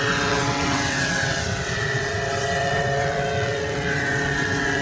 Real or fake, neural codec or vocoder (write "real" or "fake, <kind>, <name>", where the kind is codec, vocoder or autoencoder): fake, vocoder, WaveNeXt